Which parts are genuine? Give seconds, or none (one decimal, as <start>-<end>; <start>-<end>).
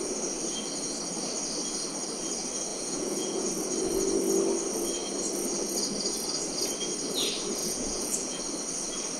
0.0-2.7; 3.5-7.6; 8.4-9.2